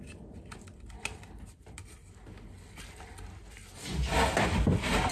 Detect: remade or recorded recorded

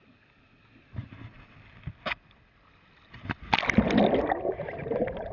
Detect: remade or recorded recorded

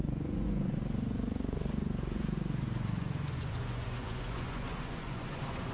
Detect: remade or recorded remade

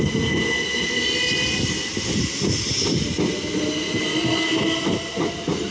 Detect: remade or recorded recorded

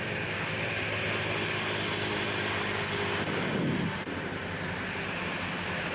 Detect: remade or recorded recorded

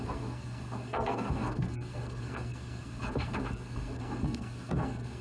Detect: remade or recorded remade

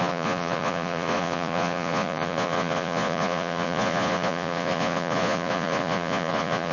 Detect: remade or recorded remade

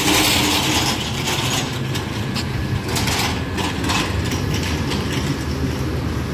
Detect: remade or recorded recorded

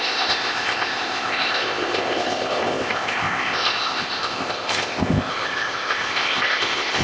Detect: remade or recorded remade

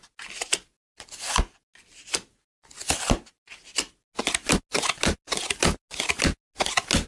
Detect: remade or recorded recorded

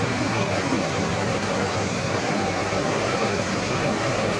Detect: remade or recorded remade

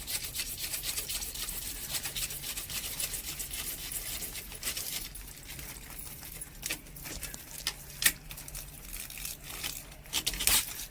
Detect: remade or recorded remade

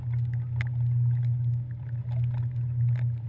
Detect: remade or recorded recorded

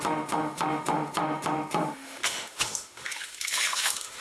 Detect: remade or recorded remade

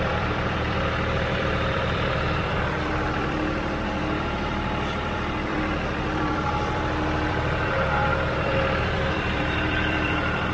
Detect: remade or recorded remade